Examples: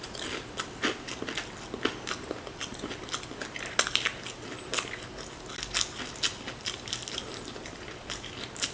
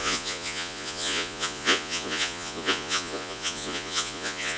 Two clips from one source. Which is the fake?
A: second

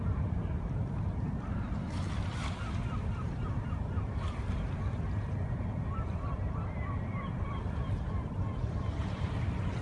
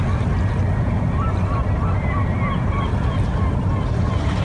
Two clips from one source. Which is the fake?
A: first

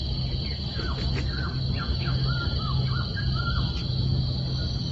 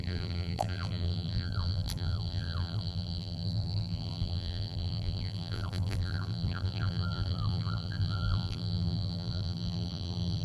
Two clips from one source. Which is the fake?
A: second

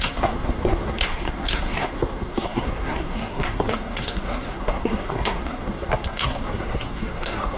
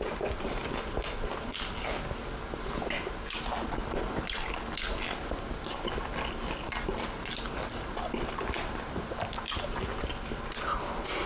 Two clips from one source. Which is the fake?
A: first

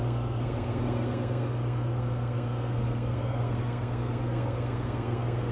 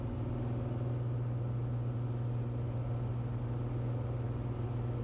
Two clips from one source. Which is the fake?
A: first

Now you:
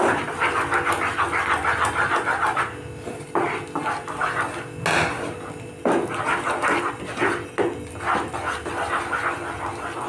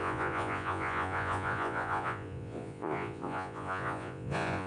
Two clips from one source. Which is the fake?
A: second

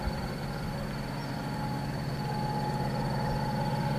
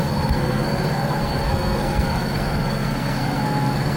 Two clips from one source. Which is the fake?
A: second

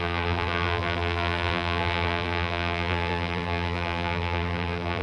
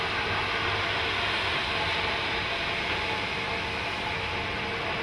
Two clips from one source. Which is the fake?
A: first